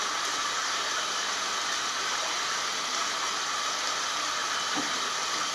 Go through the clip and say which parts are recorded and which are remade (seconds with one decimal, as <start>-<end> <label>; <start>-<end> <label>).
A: 0.0-4.4 recorded; 4.4-5.5 remade